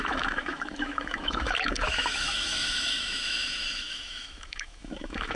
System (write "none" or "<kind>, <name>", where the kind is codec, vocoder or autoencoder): autoencoder, DAC-VAE